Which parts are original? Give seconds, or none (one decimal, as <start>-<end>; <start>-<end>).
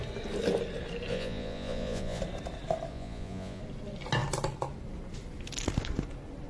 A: 0.0-1.1; 2.2-2.9; 3.6-6.5